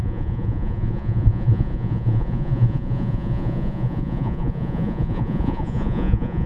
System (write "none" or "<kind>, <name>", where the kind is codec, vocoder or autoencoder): vocoder, Vocos